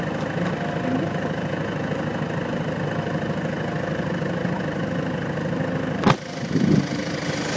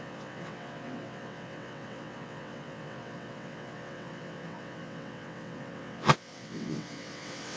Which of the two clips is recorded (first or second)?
first